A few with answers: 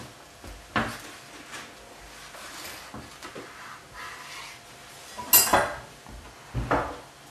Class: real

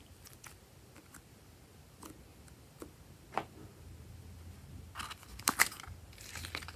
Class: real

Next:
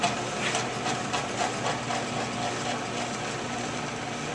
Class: real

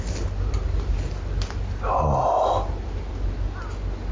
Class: real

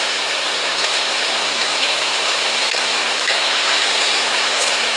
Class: fake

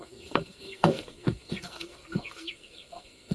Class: fake